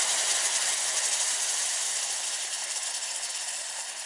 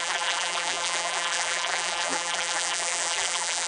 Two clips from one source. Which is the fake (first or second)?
second